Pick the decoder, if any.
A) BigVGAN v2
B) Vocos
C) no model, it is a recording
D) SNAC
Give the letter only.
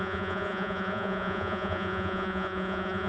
B